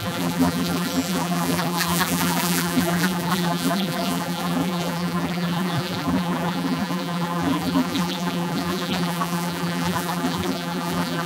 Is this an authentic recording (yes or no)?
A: no